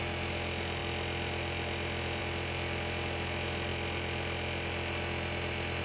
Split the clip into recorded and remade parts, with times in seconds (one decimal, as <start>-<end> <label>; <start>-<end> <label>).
0.0-5.8 recorded